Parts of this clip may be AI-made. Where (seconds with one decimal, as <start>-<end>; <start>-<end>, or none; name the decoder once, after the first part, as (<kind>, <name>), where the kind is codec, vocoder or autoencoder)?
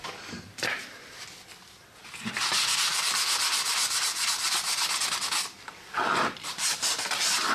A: 0.8-1.3 (vocoder, BigVGAN v2); 2.9-7.1